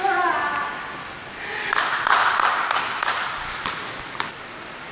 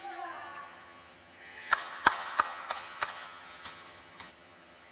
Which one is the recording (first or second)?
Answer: first